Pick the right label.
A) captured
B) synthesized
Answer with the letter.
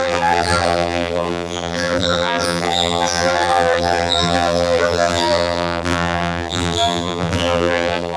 B